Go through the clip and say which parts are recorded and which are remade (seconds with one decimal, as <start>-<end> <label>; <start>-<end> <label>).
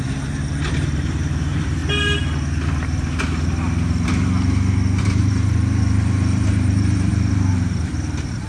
0.0-1.8 remade; 1.8-5.0 recorded; 5.0-8.5 remade